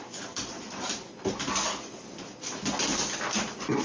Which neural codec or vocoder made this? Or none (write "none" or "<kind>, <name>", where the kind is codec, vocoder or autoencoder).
none